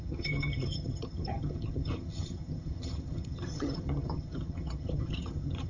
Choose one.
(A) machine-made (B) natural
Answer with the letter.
A